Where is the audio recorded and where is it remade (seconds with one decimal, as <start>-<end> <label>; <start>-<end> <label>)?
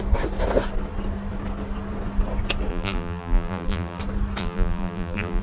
0.0-2.7 recorded; 2.7-4.0 remade; 4.0-4.4 recorded; 4.4-5.4 remade